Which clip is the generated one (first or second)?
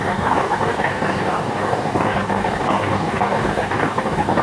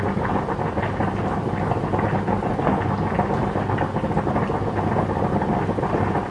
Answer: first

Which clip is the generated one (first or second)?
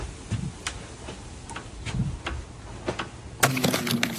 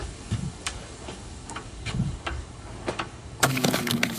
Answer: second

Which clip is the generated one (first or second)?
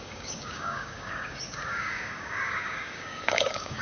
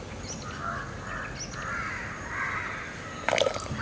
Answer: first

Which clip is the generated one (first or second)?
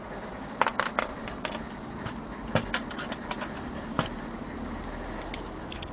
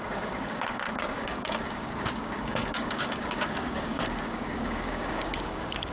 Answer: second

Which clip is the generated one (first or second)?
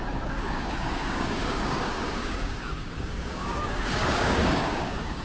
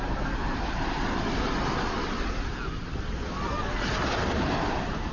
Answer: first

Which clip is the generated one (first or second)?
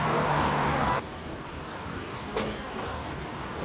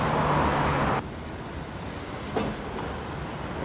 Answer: first